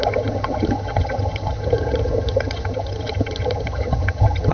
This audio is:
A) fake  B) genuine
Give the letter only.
A